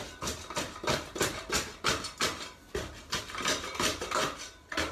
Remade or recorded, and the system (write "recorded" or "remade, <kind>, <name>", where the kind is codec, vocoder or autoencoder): recorded